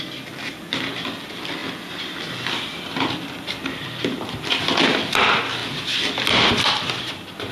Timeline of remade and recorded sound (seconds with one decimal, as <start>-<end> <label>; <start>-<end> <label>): 0.0-7.5 recorded